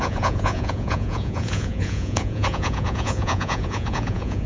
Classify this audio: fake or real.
fake